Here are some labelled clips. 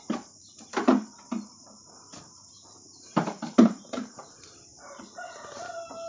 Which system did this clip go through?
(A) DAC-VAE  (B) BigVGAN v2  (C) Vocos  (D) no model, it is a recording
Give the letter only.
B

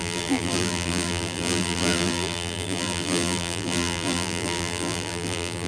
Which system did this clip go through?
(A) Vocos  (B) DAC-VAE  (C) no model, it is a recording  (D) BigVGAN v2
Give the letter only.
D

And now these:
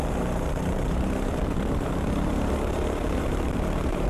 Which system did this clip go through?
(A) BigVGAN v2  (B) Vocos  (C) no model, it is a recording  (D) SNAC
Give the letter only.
A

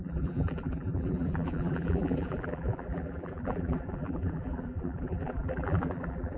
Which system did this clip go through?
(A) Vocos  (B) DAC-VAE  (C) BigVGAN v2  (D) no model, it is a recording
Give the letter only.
C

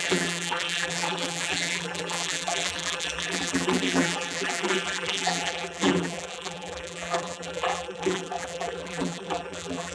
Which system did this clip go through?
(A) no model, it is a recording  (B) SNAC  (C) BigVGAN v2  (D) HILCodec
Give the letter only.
C